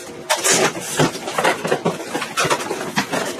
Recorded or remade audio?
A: recorded